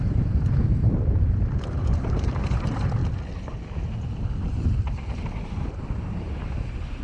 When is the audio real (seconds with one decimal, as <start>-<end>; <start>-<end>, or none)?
3.0-5.5